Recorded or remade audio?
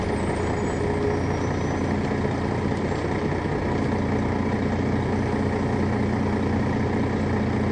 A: recorded